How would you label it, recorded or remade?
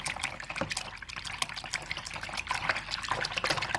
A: recorded